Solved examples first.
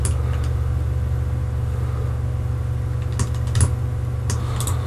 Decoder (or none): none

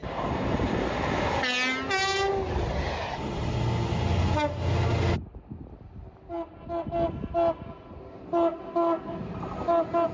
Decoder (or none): none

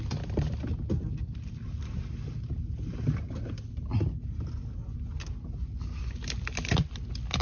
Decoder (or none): none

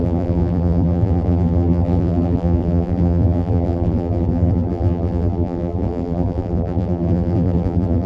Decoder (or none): vocoder, BigVGAN v2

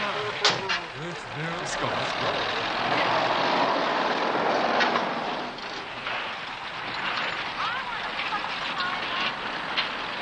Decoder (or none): none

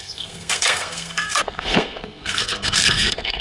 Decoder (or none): codec, SNAC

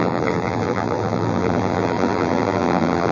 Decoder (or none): vocoder, BigVGAN v2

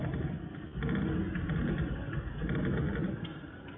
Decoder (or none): none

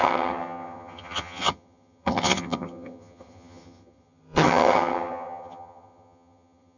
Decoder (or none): vocoder, HiFi-GAN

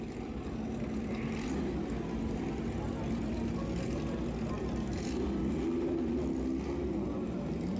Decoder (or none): none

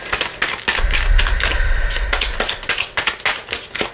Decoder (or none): none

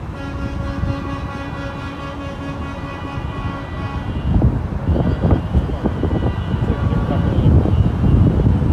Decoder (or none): none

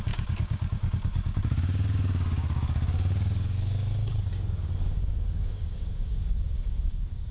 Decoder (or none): codec, DAC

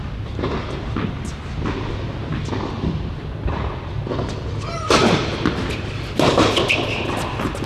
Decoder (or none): none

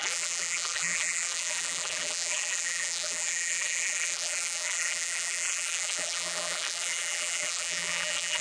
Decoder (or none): vocoder, BigVGAN v2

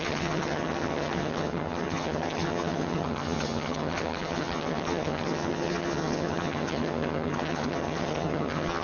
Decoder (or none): vocoder, HiFi-GAN